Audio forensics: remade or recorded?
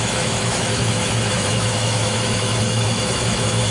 remade